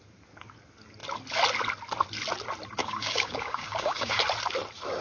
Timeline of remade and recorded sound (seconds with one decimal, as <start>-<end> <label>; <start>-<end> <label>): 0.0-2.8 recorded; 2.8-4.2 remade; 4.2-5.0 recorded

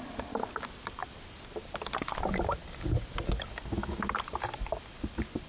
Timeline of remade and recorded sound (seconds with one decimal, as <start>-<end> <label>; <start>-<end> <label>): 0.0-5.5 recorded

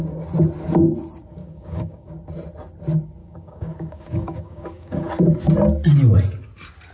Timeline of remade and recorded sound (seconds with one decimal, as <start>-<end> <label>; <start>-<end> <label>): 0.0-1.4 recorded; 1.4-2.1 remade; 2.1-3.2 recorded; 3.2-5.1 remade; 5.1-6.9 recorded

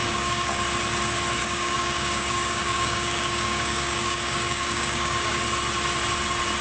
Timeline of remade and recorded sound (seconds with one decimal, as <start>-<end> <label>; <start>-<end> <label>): 0.0-0.6 remade; 0.6-1.4 recorded; 1.4-5.4 remade; 5.4-6.6 recorded

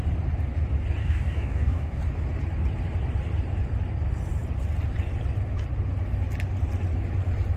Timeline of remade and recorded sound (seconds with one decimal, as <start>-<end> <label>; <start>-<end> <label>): 0.0-1.0 recorded; 1.0-2.0 remade; 2.0-7.6 recorded

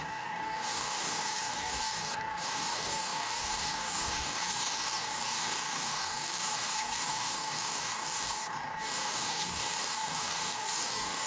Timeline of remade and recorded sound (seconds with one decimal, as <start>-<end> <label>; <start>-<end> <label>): 0.0-11.3 remade

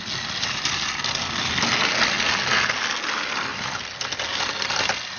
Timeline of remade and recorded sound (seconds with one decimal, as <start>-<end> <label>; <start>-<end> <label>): 0.0-5.2 recorded